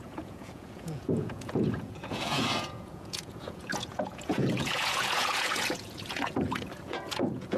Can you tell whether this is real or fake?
fake